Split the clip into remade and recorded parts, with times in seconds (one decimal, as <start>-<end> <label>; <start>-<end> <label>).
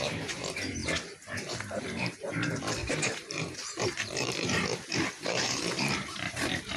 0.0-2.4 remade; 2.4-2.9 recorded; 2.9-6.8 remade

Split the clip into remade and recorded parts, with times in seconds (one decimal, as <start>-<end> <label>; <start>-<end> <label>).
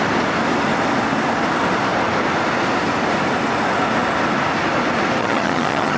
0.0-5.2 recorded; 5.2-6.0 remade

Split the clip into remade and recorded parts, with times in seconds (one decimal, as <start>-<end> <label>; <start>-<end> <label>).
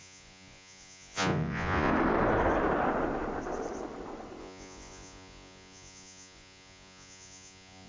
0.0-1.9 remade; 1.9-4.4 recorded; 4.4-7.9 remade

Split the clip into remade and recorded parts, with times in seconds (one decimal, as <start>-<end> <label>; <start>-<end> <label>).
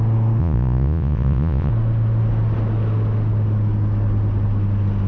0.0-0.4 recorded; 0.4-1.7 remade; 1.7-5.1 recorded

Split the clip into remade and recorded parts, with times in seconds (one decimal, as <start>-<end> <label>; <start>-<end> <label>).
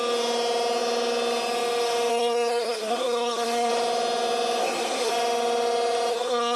0.0-2.1 recorded; 2.1-3.7 remade; 3.7-4.6 recorded; 4.6-5.1 remade; 5.1-6.1 recorded; 6.1-6.6 remade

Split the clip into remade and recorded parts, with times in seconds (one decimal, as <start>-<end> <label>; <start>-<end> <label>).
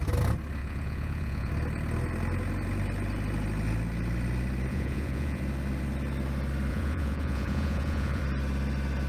0.0-0.6 recorded; 0.6-1.5 remade; 1.5-4.7 recorded; 4.7-5.4 remade; 5.4-6.7 recorded; 6.7-8.2 remade; 8.2-9.1 recorded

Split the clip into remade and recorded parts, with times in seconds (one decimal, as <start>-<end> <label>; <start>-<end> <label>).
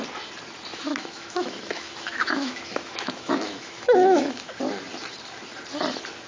0.0-0.7 recorded; 0.7-4.5 remade; 4.5-6.3 recorded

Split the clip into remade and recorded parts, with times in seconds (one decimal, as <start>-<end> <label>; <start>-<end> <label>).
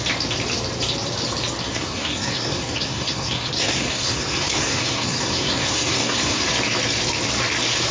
0.0-1.7 recorded; 1.7-6.4 remade; 6.4-7.9 recorded